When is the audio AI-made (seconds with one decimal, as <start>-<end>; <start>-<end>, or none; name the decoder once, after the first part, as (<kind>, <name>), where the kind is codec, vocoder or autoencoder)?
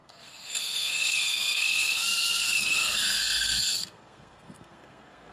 0.0-5.3 (codec, SNAC)